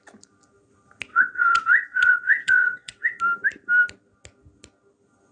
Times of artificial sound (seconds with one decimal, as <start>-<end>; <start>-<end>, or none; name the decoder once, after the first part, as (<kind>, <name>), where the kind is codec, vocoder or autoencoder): 1.1-3.2 (vocoder, WaveNeXt)